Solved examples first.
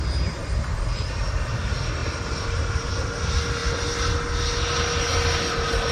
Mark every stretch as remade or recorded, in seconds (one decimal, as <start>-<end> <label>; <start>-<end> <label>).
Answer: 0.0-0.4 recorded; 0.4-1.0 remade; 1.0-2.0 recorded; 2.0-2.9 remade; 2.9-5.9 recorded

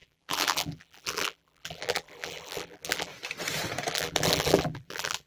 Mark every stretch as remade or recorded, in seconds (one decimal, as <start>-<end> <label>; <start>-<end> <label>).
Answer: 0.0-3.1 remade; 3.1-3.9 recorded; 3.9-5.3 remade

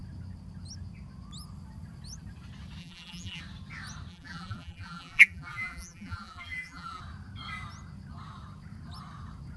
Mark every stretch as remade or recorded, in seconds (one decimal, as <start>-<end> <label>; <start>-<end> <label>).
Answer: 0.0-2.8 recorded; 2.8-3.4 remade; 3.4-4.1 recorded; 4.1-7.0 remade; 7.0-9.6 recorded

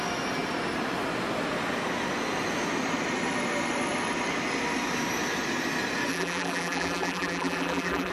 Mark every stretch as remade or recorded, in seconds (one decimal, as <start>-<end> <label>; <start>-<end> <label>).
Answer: 0.0-6.1 recorded; 6.1-8.1 remade